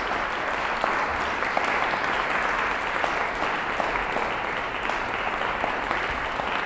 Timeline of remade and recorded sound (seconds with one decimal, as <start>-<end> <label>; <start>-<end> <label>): 0.0-6.7 recorded